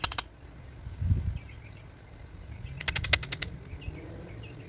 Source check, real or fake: real